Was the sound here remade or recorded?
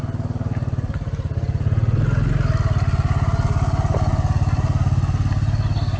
recorded